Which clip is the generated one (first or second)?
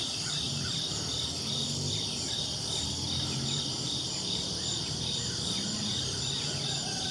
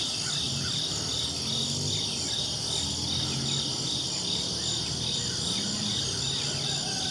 first